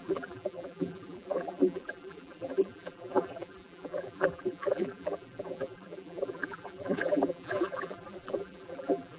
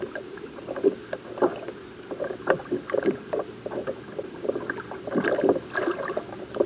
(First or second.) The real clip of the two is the second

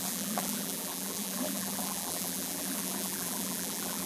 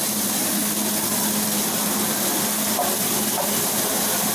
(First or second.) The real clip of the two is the second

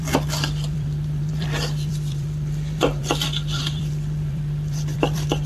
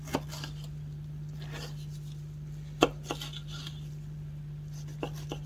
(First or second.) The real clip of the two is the second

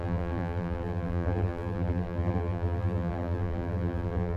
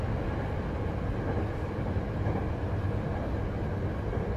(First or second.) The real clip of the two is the second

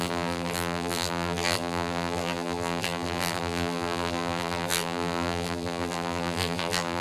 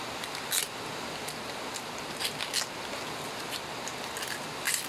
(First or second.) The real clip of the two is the second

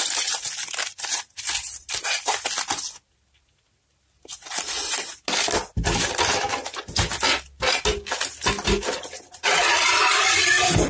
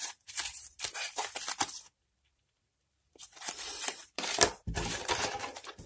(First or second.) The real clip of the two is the first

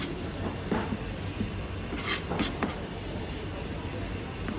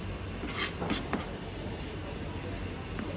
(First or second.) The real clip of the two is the second